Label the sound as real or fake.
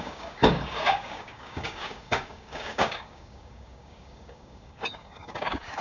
fake